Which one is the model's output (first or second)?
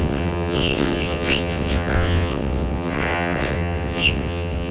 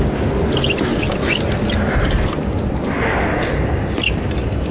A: first